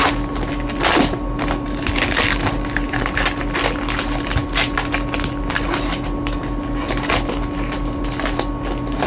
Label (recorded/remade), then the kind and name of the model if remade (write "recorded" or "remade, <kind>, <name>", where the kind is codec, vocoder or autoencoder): recorded